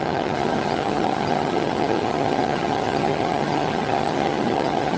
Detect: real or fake fake